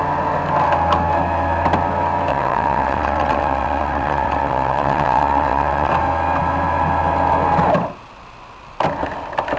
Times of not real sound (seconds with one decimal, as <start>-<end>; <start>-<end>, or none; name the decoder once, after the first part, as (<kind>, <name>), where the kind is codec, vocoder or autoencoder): 2.3-5.9 (vocoder, WaveNeXt)

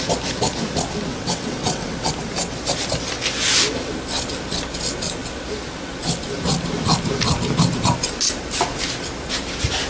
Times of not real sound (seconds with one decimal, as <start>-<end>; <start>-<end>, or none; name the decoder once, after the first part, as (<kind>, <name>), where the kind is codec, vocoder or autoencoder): 1.1-2.1 (vocoder, WaveNeXt)

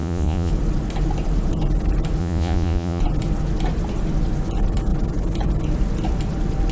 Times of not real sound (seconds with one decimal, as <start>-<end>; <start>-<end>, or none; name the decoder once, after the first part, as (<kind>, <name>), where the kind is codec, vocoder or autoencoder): 0.0-0.5 (vocoder, Vocos); 2.2-3.0

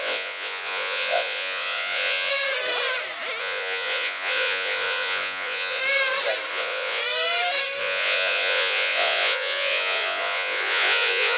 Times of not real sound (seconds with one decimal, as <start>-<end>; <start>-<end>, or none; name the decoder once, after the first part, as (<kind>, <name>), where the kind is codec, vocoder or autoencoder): 0.0-2.3 (vocoder, Vocos); 3.4-5.8; 6.5-7.0; 7.8-11.4

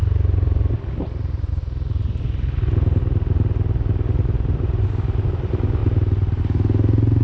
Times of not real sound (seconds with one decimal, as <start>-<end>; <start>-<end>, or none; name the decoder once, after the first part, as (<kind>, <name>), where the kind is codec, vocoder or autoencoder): none